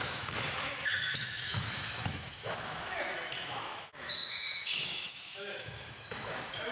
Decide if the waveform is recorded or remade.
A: remade